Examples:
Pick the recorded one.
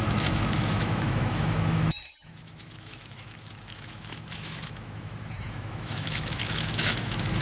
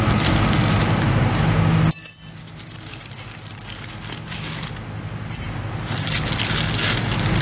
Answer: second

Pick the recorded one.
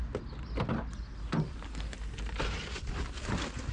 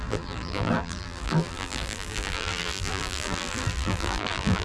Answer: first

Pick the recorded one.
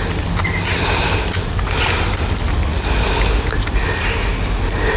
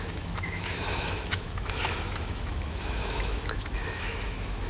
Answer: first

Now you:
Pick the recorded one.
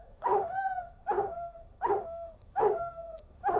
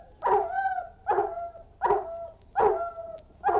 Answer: second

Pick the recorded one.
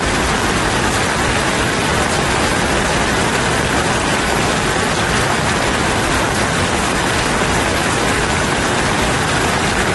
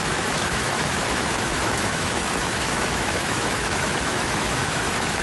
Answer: first